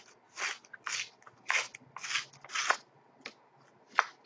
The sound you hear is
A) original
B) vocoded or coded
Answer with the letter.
A